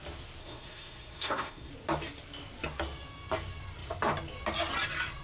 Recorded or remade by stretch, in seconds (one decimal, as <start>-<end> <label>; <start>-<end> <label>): 0.0-0.4 recorded; 0.4-1.7 remade; 1.7-5.2 recorded